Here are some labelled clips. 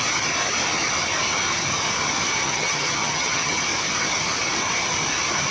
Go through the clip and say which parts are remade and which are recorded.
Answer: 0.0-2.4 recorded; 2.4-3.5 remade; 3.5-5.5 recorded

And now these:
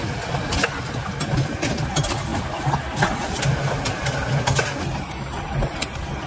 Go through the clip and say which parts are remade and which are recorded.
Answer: 0.0-6.3 recorded

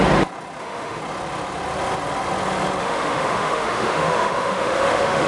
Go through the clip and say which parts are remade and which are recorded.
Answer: 0.0-0.6 recorded; 0.6-1.0 remade; 1.0-2.8 recorded; 2.8-5.3 remade

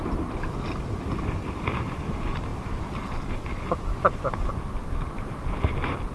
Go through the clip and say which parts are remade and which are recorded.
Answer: 0.0-6.1 recorded

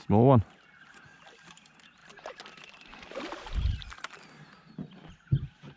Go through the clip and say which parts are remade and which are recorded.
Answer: 0.0-5.8 recorded